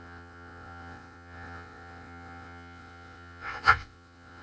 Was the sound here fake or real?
fake